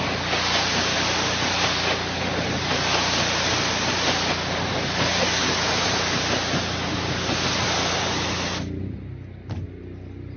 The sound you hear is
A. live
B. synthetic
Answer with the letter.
A